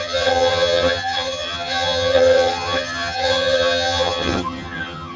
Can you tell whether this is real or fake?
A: fake